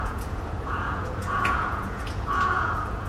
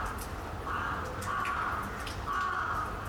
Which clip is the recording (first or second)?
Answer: second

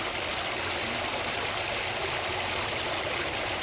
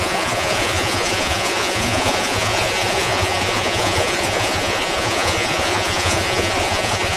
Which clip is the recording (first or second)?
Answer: first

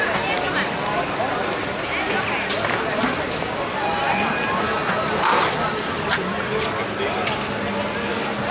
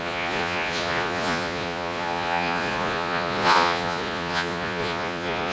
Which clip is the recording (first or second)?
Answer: first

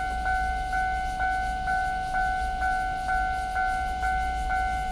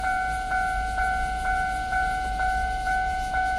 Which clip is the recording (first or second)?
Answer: first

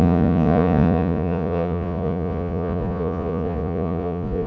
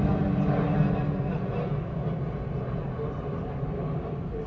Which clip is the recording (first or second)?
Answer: second